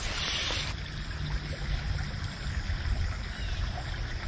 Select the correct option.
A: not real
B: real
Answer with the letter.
B